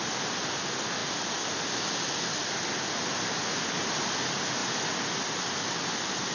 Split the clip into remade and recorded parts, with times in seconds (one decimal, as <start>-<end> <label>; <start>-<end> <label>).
0.0-6.3 recorded